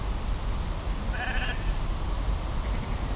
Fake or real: real